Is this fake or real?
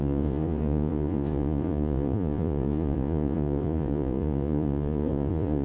fake